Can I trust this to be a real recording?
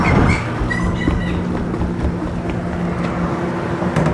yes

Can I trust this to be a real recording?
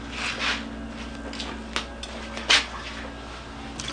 yes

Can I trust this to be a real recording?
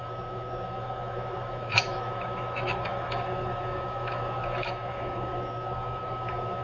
no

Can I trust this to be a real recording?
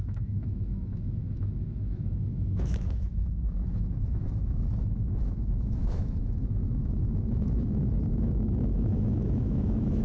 no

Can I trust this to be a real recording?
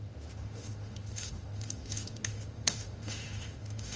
no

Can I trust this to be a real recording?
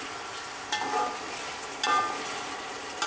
yes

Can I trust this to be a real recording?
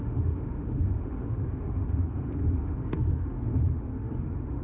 no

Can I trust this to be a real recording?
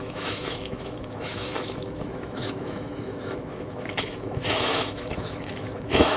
no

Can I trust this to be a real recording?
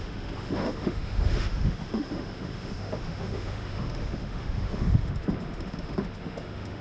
no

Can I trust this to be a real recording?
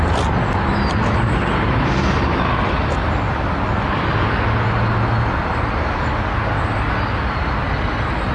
yes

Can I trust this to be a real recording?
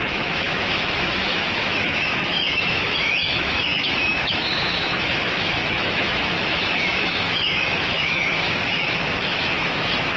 no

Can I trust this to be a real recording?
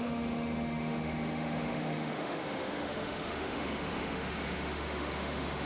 no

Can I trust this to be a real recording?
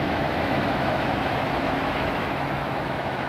no